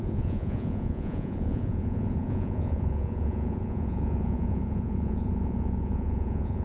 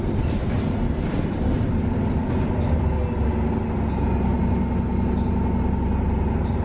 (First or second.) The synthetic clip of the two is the first